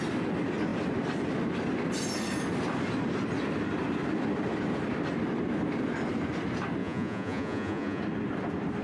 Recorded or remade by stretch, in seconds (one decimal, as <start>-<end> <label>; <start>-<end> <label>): 0.0-6.8 recorded; 6.8-8.0 remade; 8.0-8.8 recorded

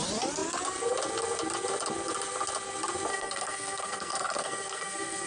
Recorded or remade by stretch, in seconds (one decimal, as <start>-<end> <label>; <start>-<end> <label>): 0.0-3.1 recorded; 3.1-5.3 remade

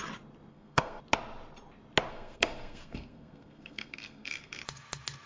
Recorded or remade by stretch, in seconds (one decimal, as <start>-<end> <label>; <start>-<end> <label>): 0.0-0.5 recorded; 0.5-1.0 remade; 1.0-2.1 recorded; 2.1-4.6 remade; 4.6-5.3 recorded

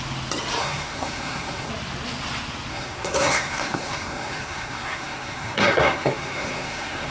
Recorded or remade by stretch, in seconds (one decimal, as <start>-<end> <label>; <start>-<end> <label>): 0.0-0.6 recorded; 0.6-1.7 remade; 1.7-2.7 recorded; 2.7-7.1 remade

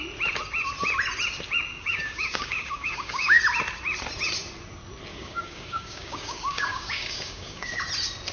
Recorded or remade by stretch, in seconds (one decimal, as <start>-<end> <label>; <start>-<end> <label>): 0.0-1.7 recorded; 1.7-3.4 remade; 3.4-5.1 recorded; 5.1-7.7 remade; 7.7-8.3 recorded

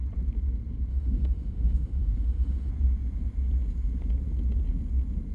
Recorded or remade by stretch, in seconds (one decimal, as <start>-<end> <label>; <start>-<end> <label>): 0.0-0.9 recorded; 0.9-2.7 remade; 2.7-5.3 recorded

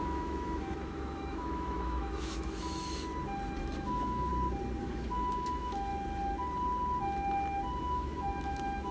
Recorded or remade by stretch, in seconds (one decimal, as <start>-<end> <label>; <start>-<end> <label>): 0.0-3.1 remade; 3.1-3.6 recorded; 3.6-4.3 remade; 4.3-4.8 recorded; 4.8-5.9 remade; 5.9-7.8 recorded; 7.8-8.9 remade